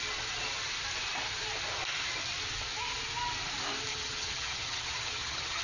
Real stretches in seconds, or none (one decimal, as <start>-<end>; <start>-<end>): 0.0-3.9